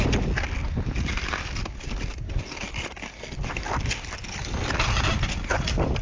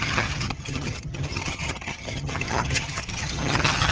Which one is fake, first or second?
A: second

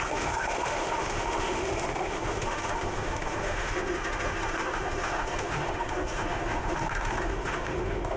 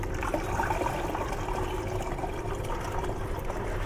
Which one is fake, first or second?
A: first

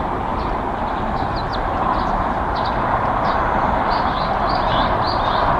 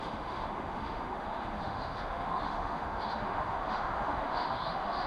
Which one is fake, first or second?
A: second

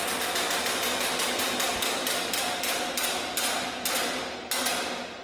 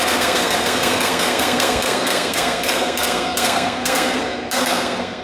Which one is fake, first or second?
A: second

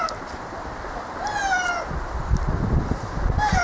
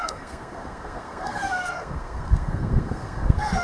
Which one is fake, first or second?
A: second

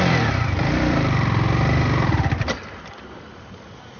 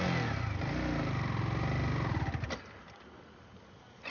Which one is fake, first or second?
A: first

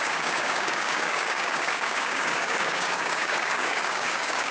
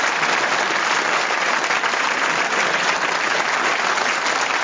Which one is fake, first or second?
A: first